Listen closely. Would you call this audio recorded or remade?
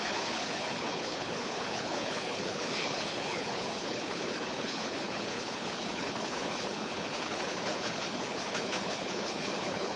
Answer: remade